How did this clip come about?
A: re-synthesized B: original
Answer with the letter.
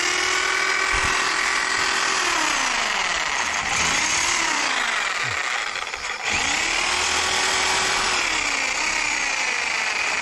B